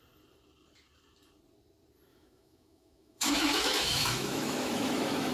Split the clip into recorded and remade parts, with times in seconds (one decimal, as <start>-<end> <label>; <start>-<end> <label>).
0.0-2.1 recorded; 2.1-5.3 remade

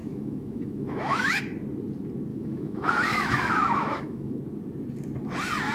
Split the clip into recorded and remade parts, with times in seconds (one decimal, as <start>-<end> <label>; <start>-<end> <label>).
0.0-1.4 remade; 1.4-2.3 recorded; 2.3-4.3 remade; 4.3-5.7 recorded

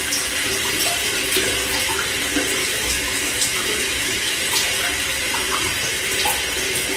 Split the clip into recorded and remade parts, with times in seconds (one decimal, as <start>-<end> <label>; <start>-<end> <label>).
0.0-2.6 recorded; 2.6-4.4 remade; 4.4-7.0 recorded

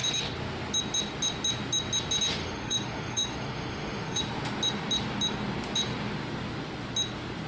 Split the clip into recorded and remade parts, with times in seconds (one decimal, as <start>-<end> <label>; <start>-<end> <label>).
0.0-2.4 recorded; 2.4-4.2 remade; 4.2-7.5 recorded

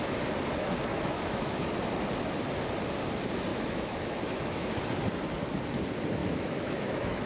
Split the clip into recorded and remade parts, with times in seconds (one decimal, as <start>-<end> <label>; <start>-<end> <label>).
0.0-0.9 recorded; 0.9-1.7 remade; 1.7-3.5 recorded; 3.5-4.8 remade; 4.8-6.2 recorded; 6.2-7.3 remade

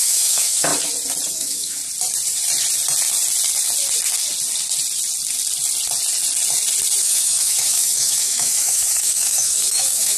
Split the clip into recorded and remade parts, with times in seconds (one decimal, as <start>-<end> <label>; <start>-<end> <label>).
0.0-0.7 remade; 0.7-1.3 recorded; 1.3-1.8 remade; 1.8-7.0 recorded; 7.0-10.2 remade